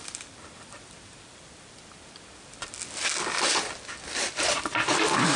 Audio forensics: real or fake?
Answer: fake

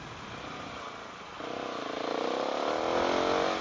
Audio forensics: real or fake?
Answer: real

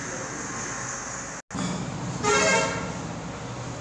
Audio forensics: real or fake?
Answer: real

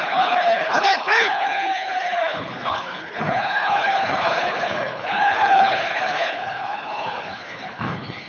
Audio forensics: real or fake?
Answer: fake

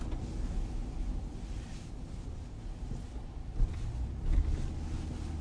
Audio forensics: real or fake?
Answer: real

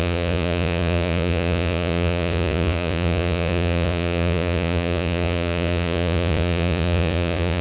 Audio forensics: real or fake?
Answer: fake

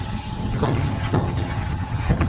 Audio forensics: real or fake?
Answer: fake